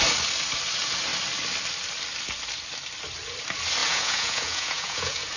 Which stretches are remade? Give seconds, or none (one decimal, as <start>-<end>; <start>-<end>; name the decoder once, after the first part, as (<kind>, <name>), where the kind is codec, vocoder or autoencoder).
3.8-5.4 (vocoder, Vocos)